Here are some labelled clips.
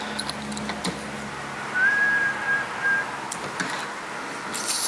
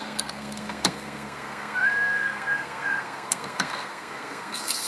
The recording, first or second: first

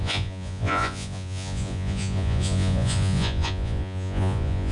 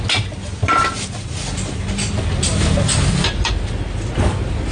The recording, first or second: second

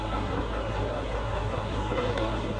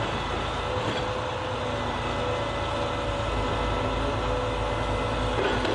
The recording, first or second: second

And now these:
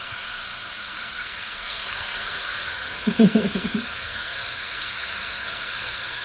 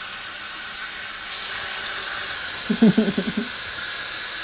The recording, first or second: second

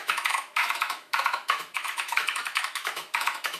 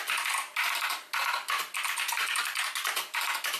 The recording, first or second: second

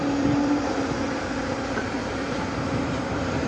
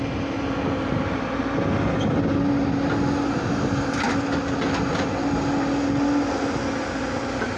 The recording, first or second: second